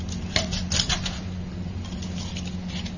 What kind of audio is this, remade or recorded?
recorded